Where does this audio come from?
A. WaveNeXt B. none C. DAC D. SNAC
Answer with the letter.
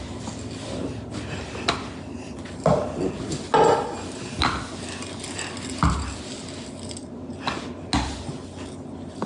B